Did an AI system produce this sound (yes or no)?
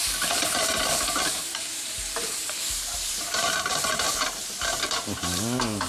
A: yes